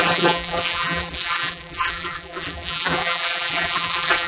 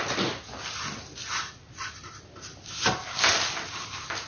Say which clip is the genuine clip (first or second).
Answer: second